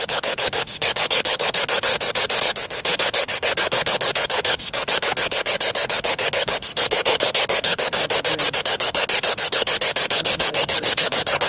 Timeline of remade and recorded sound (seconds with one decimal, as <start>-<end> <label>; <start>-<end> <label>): 0.0-1.9 remade; 1.9-2.4 recorded; 2.4-8.0 remade; 8.0-8.6 recorded; 8.6-11.5 remade